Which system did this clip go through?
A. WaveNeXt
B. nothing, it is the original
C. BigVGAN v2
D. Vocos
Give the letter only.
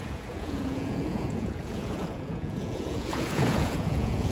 D